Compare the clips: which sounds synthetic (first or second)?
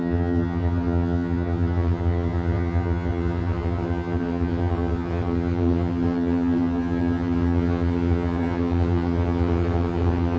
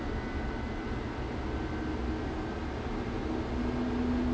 first